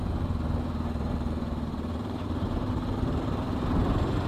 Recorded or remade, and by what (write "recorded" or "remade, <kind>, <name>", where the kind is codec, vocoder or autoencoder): remade, vocoder, BigVGAN v2